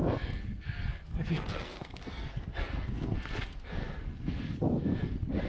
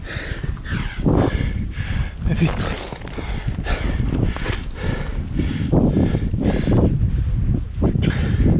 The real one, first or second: second